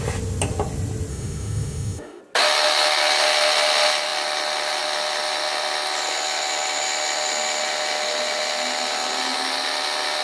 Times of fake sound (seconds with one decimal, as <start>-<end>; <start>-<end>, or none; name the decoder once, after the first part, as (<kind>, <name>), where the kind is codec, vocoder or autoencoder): 1.1-2.2 (autoencoder, DAC-VAE)